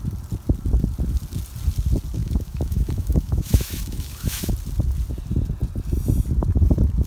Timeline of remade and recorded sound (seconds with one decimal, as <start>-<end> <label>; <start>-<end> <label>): 0.0-2.2 recorded; 2.2-4.5 remade; 4.5-7.1 recorded